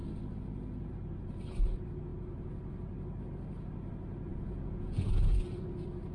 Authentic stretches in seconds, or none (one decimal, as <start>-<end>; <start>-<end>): 0.0-4.3; 5.4-6.1